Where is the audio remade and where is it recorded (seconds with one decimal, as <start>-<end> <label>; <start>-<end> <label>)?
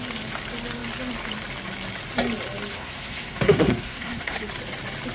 0.0-2.7 recorded; 2.7-4.5 remade; 4.5-5.1 recorded